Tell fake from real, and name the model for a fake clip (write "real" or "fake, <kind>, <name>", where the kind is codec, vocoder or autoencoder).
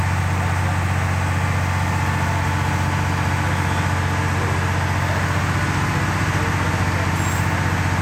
real